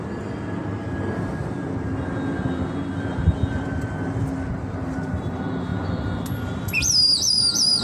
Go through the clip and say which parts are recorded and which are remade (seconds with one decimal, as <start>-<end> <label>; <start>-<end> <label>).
0.0-7.8 recorded